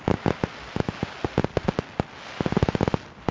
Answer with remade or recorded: recorded